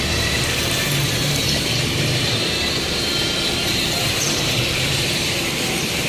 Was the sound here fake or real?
fake